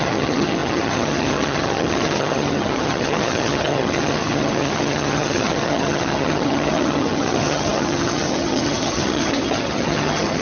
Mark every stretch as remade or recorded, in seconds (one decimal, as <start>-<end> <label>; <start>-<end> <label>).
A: 0.0-10.4 remade